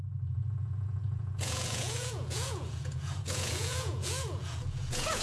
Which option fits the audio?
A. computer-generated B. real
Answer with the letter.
A